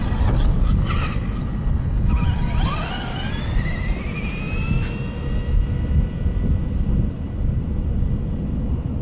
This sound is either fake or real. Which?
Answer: real